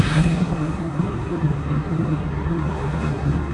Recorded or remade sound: remade